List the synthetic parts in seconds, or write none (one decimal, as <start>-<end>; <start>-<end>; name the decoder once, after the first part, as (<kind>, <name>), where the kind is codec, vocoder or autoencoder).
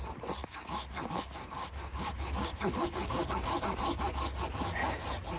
0.4-3.6 (codec, DAC)